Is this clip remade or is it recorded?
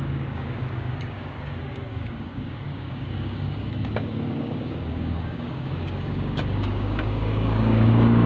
remade